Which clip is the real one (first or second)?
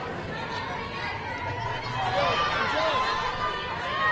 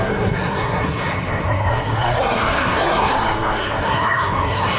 first